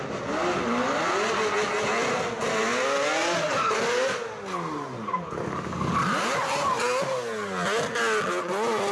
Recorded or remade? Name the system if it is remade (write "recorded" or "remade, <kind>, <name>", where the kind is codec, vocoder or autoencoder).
recorded